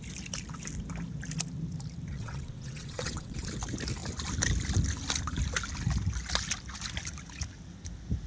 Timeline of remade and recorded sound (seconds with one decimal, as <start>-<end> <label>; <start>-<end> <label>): 0.0-2.1 recorded; 2.1-3.5 remade; 3.5-8.3 recorded